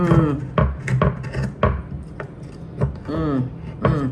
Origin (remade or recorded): recorded